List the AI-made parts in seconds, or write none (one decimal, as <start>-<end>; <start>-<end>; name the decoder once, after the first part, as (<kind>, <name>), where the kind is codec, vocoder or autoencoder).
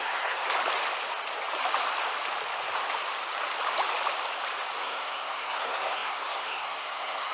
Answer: 0.0-0.4 (codec, SNAC); 4.8-7.3